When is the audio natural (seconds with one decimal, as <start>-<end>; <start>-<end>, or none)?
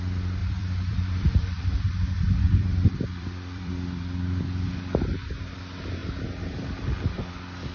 0.0-0.4; 3.7-7.7